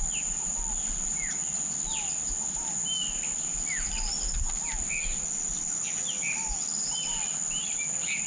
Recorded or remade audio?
recorded